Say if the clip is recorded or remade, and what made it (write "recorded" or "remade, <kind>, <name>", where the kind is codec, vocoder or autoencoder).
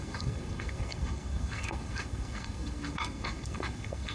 remade, codec, SNAC